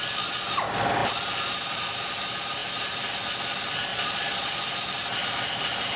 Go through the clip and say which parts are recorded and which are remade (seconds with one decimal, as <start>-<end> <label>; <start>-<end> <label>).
0.0-3.9 recorded; 3.9-4.6 remade; 4.6-6.0 recorded